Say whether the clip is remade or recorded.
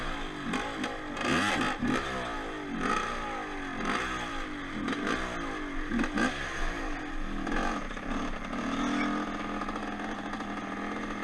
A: recorded